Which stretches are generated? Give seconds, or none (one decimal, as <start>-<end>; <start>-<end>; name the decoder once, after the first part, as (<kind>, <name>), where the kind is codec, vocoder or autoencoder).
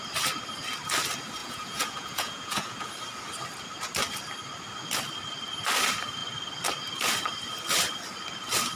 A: 1.4-2.9 (vocoder, Vocos)